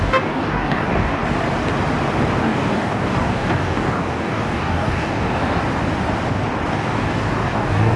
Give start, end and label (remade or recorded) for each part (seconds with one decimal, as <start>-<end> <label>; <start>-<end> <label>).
0.0-1.2 remade; 1.2-2.4 recorded; 2.4-5.6 remade; 5.6-6.7 recorded; 6.7-8.0 remade